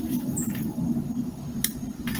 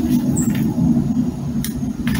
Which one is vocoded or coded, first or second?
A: first